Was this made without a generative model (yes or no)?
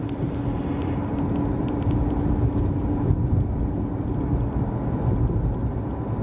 yes